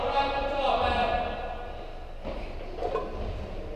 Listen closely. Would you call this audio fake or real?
real